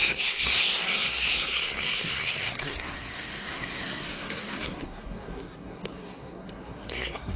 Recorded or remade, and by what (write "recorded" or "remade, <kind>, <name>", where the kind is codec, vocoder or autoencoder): remade, codec, SNAC